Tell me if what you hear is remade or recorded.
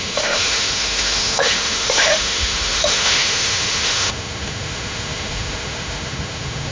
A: remade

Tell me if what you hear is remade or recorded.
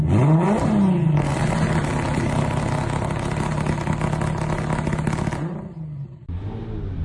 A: recorded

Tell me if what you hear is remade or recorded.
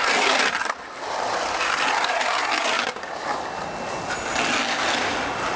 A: recorded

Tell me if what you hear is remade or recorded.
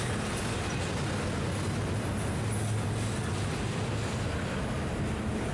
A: recorded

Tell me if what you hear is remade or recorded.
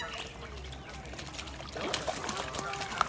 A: recorded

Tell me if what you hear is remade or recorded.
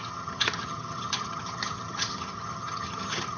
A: remade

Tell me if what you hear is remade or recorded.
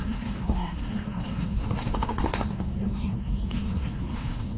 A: remade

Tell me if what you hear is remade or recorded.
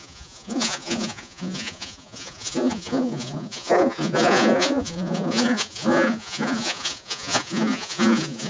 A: remade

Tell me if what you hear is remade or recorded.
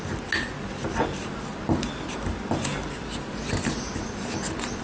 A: recorded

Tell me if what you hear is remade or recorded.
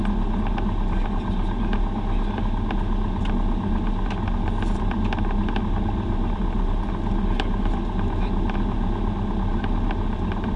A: recorded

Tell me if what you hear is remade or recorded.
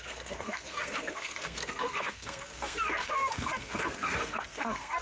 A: remade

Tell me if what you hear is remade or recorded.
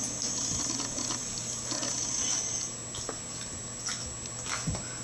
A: recorded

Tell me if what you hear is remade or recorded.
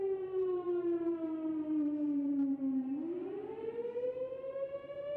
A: remade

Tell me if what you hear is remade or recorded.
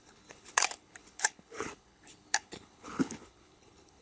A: remade